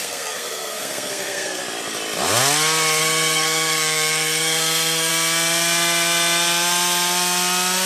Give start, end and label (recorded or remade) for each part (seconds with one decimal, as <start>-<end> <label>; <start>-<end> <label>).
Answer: 0.0-1.6 remade; 1.6-3.0 recorded; 3.0-5.1 remade; 5.1-7.9 recorded